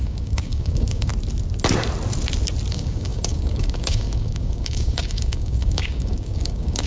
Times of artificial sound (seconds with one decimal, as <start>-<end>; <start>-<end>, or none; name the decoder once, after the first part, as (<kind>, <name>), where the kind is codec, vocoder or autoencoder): 0.0-1.1 (codec, DAC); 2.7-6.9